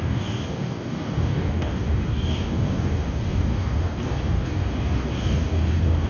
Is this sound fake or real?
fake